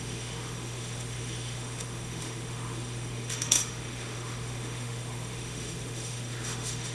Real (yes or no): no